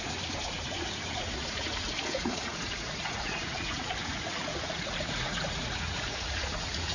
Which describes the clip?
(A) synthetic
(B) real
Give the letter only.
A